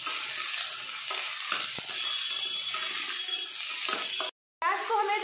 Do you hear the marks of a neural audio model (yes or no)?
no